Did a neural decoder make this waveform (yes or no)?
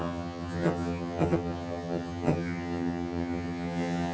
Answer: yes